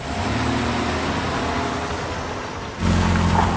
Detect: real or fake real